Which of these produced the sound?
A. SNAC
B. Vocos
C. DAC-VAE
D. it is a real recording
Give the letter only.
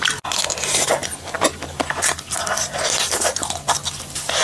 D